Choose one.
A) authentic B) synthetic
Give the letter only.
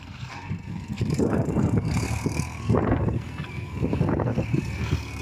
B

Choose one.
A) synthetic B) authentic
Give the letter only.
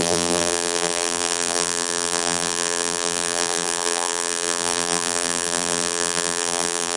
A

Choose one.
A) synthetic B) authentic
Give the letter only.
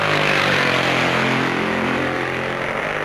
B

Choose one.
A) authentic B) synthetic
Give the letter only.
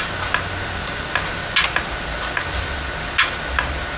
A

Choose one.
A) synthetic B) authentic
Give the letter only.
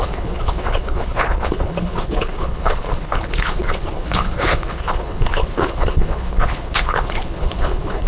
A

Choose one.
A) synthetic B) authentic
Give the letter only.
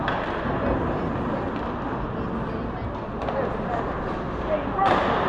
B